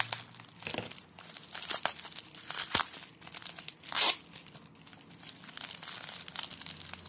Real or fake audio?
real